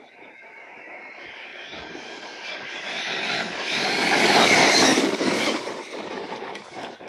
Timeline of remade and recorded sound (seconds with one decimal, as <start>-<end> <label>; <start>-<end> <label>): 0.0-7.1 remade